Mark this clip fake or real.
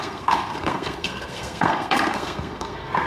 fake